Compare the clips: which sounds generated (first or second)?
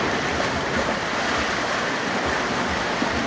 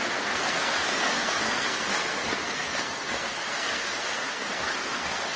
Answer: second